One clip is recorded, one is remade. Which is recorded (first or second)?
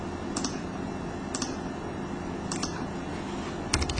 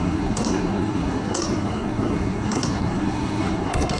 first